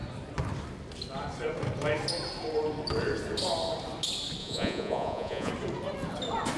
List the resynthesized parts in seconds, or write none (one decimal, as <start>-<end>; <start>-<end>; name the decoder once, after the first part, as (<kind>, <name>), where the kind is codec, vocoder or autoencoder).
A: 4.4-5.5 (vocoder, Vocos)